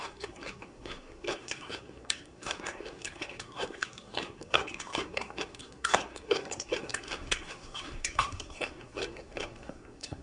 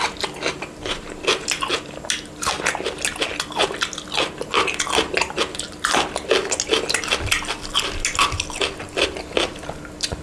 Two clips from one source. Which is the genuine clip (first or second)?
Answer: second